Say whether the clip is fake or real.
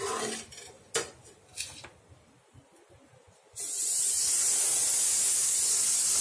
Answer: real